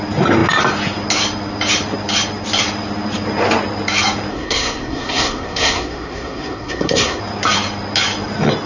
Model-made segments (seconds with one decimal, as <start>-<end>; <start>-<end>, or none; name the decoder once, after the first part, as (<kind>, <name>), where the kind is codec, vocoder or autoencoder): 4.3-7.2 (codec, SNAC)